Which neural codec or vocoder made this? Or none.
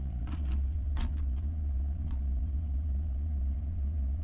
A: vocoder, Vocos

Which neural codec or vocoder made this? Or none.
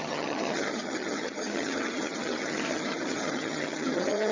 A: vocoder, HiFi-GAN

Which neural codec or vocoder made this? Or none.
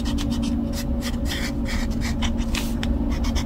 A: none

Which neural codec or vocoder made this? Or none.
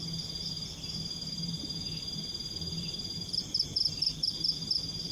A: none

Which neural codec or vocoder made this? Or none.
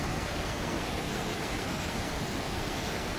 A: codec, SNAC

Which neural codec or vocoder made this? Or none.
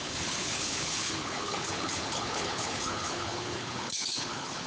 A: codec, HILCodec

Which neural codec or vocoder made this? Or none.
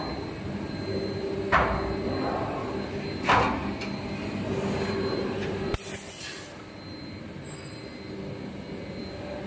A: none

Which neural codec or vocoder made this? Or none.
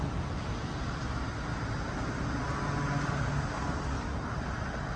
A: none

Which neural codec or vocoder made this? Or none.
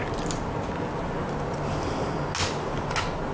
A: none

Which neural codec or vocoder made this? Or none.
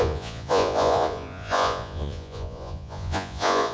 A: vocoder, Vocos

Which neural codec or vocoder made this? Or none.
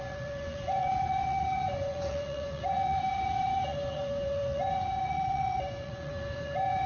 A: vocoder, Vocos